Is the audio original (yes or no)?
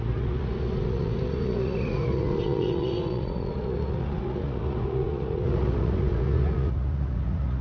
no